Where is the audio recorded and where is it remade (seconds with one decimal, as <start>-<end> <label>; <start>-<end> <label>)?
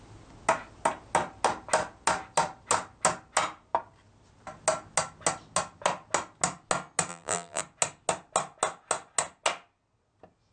0.0-7.1 recorded; 7.1-7.6 remade; 7.6-10.5 recorded